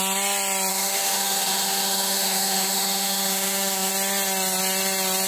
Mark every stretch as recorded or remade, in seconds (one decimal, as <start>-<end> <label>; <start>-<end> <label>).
0.0-0.7 recorded; 0.7-3.9 remade; 3.9-5.3 recorded